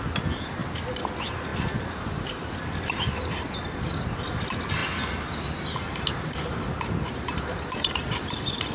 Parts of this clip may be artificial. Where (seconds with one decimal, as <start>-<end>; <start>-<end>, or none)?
0.0-0.6; 1.1-4.8; 6.3-8.7